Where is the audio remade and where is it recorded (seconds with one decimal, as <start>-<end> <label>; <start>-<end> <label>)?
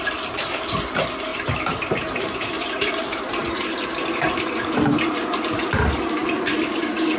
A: 0.0-7.2 remade